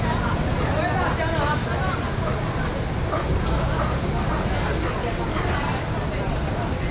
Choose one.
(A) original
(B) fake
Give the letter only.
A